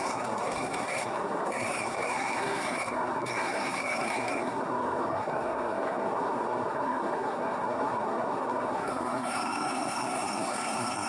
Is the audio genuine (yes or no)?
no